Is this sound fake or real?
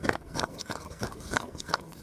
fake